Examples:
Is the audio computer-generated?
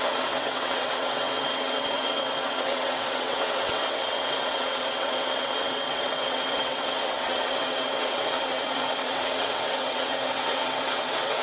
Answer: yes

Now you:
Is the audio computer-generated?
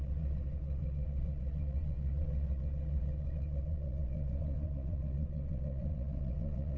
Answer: yes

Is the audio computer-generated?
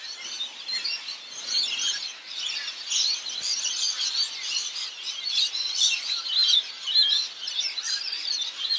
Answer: no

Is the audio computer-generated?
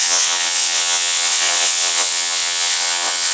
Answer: yes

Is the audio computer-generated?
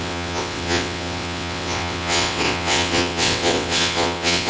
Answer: yes